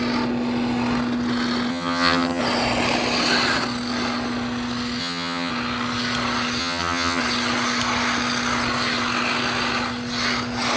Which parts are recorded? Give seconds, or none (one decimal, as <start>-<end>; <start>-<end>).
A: 0.0-1.7; 2.4-5.0; 5.5-6.6; 7.2-10.8